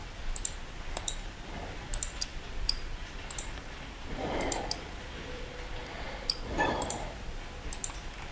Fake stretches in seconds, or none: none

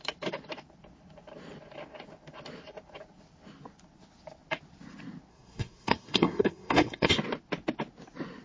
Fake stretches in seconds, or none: 5.3-7.1

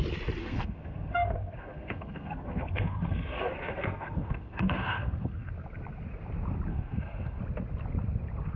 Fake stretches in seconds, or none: 0.4-5.5; 6.7-7.4

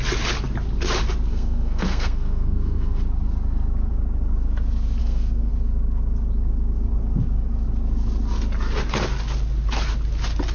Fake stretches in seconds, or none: 1.3-3.0; 5.0-5.5

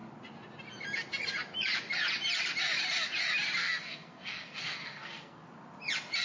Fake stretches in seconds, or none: 3.6-5.4

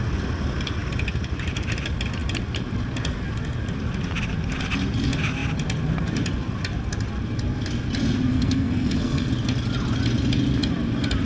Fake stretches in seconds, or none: 8.3-9.3